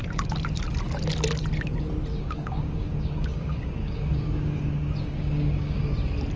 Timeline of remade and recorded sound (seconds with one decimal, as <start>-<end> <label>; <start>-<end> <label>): 0.0-2.1 recorded; 2.1-5.9 remade; 5.9-6.4 recorded

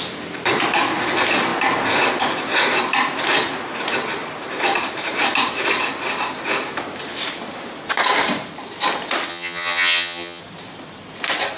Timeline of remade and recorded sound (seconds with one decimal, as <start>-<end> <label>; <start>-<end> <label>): 0.0-9.3 recorded; 9.3-10.4 remade; 10.4-11.6 recorded

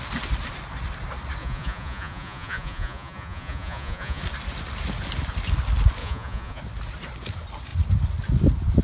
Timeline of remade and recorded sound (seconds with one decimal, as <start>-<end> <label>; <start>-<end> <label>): 0.0-1.4 recorded; 1.4-4.2 remade; 4.2-6.0 recorded; 6.0-6.6 remade; 6.6-8.8 recorded

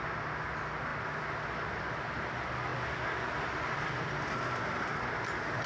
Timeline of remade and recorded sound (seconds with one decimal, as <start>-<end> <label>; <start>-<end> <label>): 0.0-5.7 recorded

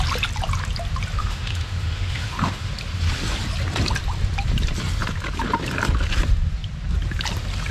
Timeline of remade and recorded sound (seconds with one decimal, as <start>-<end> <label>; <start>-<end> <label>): 0.0-1.2 recorded; 1.2-2.7 remade; 2.7-7.7 recorded

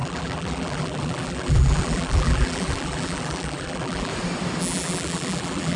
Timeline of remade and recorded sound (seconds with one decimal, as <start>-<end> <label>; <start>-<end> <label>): 0.0-4.1 remade; 4.1-4.6 recorded; 4.6-5.8 remade